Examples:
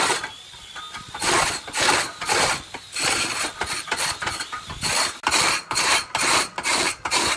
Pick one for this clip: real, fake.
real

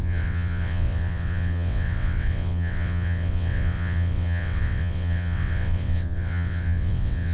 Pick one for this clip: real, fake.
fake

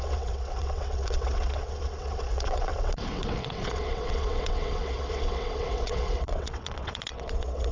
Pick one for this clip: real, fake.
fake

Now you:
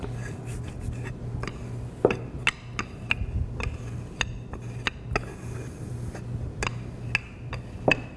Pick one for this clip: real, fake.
real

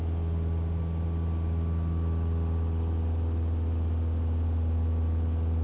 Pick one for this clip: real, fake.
real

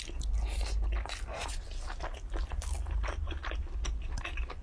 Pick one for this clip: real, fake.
real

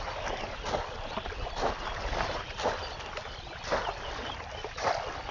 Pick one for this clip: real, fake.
real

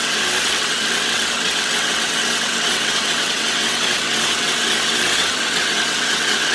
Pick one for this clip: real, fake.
fake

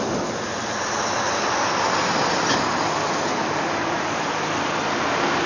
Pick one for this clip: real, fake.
real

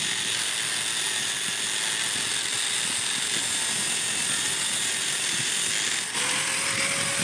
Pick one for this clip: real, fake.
real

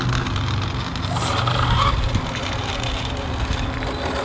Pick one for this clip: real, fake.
real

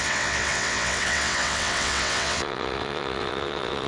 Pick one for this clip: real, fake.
fake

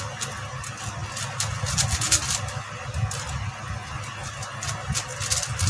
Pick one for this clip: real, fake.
real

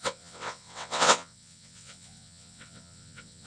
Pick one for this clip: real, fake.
fake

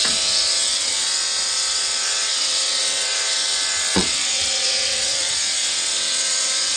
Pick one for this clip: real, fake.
fake